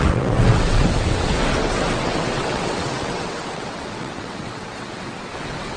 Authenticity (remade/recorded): remade